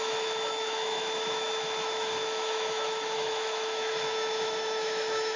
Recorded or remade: remade